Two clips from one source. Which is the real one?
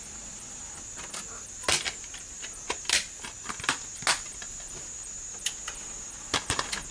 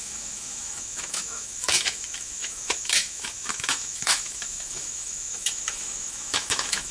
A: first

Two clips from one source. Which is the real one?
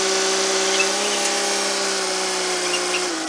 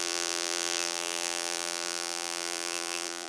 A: first